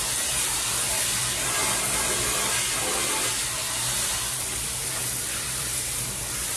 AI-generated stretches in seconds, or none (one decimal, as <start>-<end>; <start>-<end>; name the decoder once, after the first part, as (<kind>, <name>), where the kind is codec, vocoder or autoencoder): 3.6-6.6 (vocoder, BigVGAN v2)